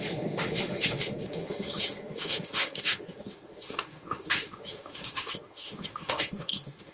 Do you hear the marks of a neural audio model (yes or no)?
yes